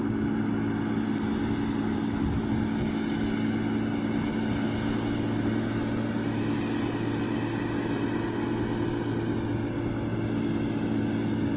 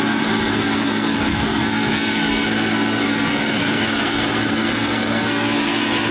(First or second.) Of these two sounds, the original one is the first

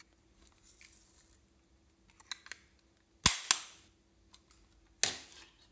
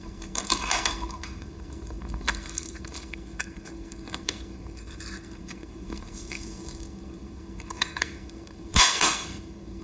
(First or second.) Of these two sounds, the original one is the first